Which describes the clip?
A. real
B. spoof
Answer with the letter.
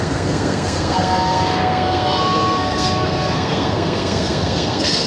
B